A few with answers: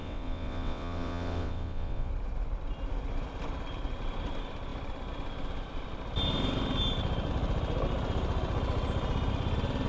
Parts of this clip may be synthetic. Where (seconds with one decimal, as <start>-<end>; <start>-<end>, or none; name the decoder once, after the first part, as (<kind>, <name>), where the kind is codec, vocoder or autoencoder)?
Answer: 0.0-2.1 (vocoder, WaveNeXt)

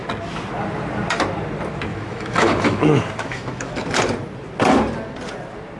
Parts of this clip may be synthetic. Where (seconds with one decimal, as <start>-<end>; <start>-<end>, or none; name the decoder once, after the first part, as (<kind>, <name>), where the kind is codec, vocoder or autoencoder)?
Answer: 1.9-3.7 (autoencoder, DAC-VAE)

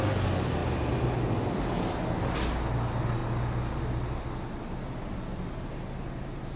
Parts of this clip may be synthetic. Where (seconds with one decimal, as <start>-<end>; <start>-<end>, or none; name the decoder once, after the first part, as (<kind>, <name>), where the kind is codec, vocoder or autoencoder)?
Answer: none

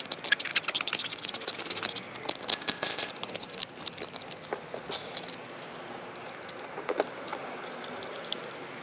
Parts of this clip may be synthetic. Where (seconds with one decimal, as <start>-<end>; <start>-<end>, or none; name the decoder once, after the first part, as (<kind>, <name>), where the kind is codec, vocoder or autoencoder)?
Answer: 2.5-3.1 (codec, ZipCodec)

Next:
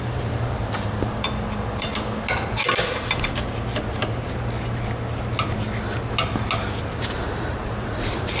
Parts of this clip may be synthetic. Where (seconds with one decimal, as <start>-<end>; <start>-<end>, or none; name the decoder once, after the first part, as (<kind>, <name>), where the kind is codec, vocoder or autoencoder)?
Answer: 0.0-1.9 (vocoder, BigVGAN v2); 6.8-8.4

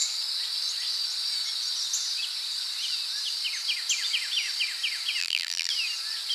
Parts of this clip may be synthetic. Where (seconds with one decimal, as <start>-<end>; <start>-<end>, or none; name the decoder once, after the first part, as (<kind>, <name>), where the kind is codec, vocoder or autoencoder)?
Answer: 5.2-5.7 (vocoder, BigVGAN v2)

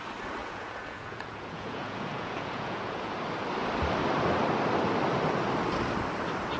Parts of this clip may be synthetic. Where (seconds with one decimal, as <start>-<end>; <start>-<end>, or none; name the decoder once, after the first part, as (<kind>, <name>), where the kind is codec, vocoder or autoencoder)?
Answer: 0.4-3.1 (vocoder, Vocos)

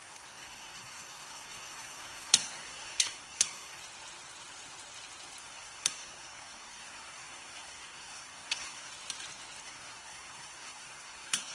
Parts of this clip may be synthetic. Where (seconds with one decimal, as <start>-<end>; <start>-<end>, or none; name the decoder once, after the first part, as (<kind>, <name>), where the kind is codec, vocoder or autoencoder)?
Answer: 0.0-3.8 (codec, SNAC); 5.4-8.9; 9.6-11.5